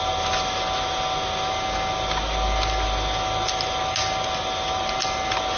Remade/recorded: recorded